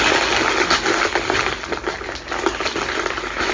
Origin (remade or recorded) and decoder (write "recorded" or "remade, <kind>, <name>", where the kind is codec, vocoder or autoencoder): recorded